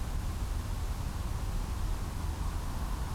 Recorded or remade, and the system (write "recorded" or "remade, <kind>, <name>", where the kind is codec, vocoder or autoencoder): recorded